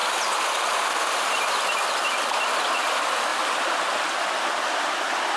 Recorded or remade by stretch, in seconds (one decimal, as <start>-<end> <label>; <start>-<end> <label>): 0.0-5.4 recorded